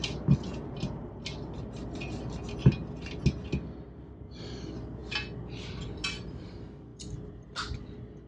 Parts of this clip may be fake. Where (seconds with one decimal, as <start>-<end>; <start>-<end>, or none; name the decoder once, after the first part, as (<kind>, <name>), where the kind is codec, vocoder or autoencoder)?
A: none